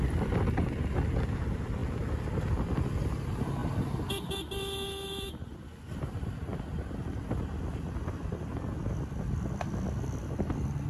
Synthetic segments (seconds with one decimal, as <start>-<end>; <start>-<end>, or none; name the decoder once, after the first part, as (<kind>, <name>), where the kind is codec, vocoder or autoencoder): 1.8-2.4 (vocoder, BigVGAN v2)